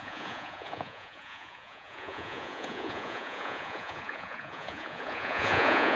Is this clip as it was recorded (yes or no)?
no